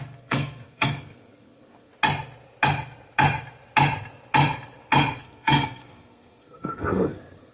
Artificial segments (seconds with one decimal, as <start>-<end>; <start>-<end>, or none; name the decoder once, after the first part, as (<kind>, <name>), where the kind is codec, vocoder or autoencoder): 0.0-1.9 (codec, SNAC); 5.2-7.5

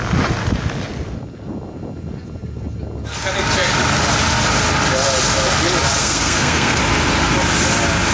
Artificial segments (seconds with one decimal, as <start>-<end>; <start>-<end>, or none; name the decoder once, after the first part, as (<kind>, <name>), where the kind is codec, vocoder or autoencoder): 6.0-6.8 (codec, SNAC)